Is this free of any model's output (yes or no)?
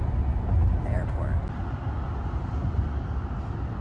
yes